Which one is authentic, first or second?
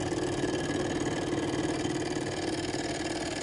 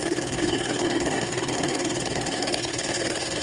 first